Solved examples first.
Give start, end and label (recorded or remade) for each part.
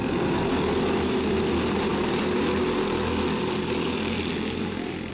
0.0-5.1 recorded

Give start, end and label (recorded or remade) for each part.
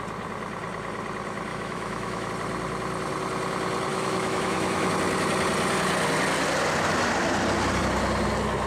0.0-1.5 recorded; 1.5-2.3 remade; 2.3-3.9 recorded; 3.9-4.9 remade; 4.9-8.7 recorded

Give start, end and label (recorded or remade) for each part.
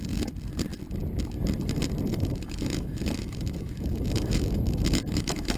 0.0-2.1 recorded; 2.1-5.6 remade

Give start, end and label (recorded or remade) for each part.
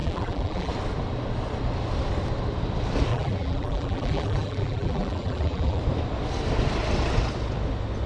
0.0-0.7 remade; 0.7-3.1 recorded; 3.1-5.8 remade; 5.8-8.1 recorded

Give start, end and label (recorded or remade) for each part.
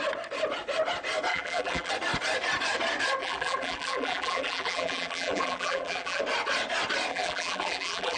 0.0-1.3 recorded; 1.3-1.9 remade; 1.9-3.2 recorded; 3.2-6.2 remade; 6.2-7.1 recorded; 7.1-8.2 remade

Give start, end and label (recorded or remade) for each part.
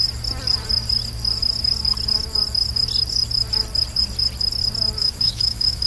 0.0-5.0 recorded; 5.0-5.9 remade